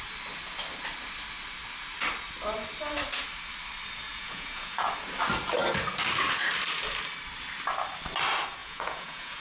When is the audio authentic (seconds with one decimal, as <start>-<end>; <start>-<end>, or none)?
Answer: 0.0-4.1; 4.9-8.6